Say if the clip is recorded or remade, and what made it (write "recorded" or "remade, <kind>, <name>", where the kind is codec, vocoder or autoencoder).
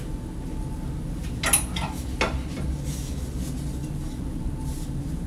recorded